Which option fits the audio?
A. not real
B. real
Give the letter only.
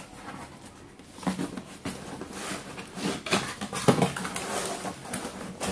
B